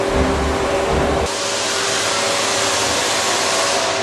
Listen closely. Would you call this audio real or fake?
real